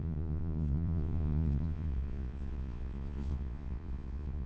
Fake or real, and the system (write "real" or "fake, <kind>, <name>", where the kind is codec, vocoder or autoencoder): fake, vocoder, Vocos